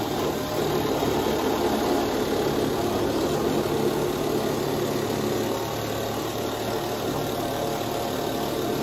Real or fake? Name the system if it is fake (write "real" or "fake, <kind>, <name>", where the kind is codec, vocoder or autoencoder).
real